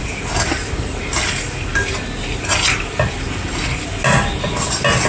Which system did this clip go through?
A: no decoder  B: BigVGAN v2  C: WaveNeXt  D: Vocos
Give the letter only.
A